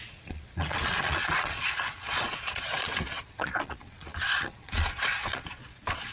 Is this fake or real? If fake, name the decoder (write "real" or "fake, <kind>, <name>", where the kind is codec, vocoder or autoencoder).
fake, vocoder, Vocos